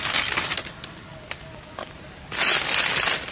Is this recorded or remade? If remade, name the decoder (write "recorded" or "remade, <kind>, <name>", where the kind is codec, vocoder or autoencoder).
recorded